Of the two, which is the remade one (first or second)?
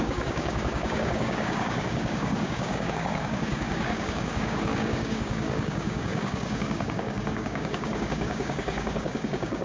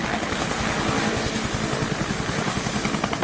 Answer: first